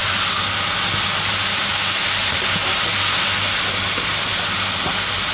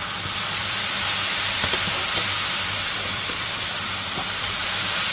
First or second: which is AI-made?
second